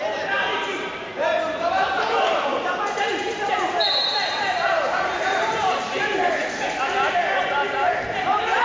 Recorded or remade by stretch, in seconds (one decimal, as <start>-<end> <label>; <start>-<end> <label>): 0.0-2.5 remade; 2.5-3.0 recorded; 3.0-6.4 remade; 6.4-7.4 recorded; 7.4-8.6 remade